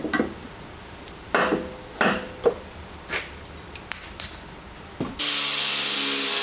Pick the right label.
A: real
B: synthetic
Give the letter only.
A